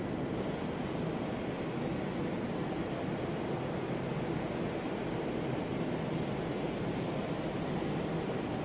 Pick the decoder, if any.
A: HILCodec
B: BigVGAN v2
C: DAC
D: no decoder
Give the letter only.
D